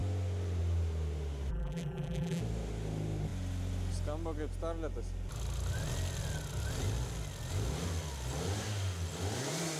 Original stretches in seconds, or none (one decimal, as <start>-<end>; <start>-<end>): 0.0-1.5; 2.4-9.8